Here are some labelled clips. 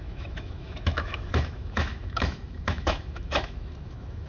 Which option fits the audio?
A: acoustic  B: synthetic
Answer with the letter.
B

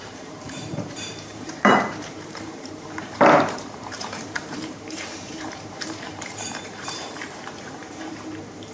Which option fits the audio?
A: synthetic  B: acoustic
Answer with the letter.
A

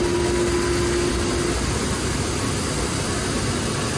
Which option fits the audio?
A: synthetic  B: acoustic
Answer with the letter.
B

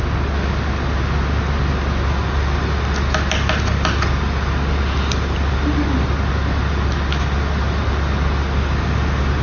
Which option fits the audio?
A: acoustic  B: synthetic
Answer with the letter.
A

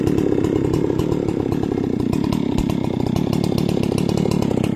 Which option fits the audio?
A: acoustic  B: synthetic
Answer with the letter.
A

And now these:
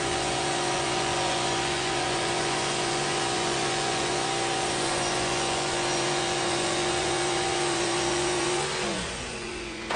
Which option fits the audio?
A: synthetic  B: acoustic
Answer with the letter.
A